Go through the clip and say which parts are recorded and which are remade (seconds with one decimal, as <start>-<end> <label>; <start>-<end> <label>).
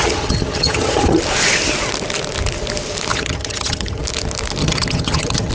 0.0-1.2 remade; 1.2-3.1 recorded; 3.1-4.0 remade; 4.0-4.6 recorded; 4.6-5.5 remade